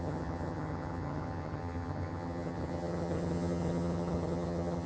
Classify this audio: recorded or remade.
remade